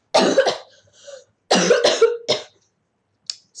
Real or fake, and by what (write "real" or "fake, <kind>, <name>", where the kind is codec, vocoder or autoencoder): real